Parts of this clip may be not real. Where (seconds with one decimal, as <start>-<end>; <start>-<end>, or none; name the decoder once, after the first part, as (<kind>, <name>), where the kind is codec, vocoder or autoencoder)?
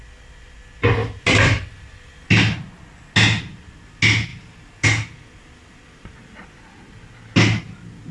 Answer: 1.0-2.3 (vocoder, BigVGAN v2); 4.3-6.6